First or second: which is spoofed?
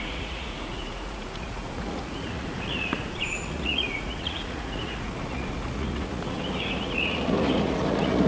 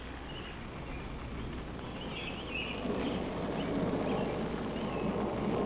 first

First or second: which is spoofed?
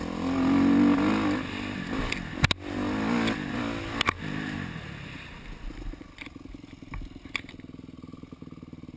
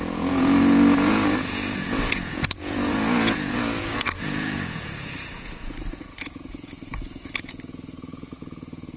second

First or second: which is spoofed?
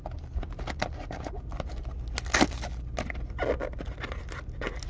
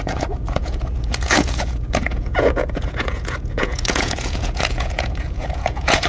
second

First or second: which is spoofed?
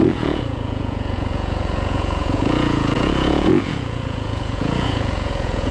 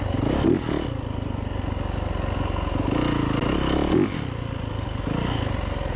first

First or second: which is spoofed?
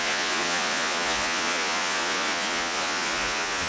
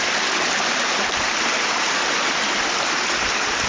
first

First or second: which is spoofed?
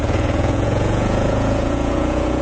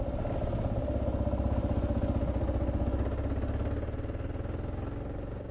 first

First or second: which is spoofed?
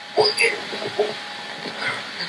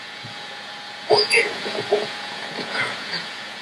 second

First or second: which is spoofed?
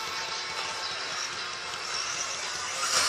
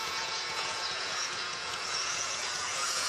second